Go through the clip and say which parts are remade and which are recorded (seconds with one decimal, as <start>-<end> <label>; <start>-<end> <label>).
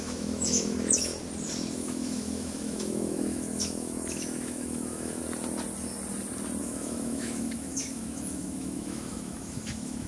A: 0.0-1.1 remade; 1.1-1.7 recorded; 1.7-5.2 remade; 5.2-6.6 recorded; 6.6-10.1 remade